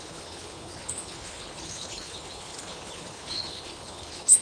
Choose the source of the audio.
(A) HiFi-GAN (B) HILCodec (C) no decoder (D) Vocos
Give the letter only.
B